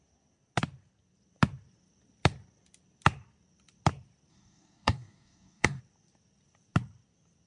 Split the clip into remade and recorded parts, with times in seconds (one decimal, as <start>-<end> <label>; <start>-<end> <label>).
0.0-4.3 recorded; 4.3-5.8 remade; 5.8-7.5 recorded